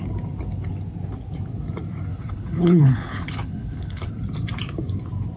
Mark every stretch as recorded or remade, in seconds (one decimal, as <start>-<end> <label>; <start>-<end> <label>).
0.0-2.1 recorded; 2.1-4.1 remade; 4.1-5.4 recorded